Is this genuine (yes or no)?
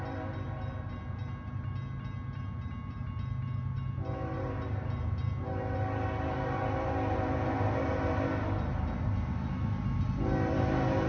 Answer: yes